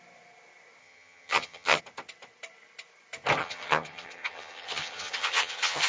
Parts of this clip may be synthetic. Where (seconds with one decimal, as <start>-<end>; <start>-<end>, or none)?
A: 0.8-1.8; 3.4-5.9